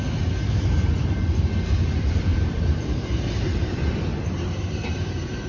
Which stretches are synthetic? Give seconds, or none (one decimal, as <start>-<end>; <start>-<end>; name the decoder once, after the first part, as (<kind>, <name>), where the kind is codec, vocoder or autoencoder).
2.3-3.9 (vocoder, BigVGAN v2)